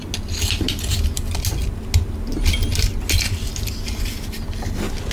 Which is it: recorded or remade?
recorded